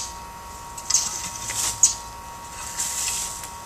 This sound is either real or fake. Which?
real